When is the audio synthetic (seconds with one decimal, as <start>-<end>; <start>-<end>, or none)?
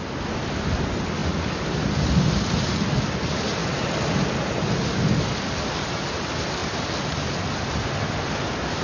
none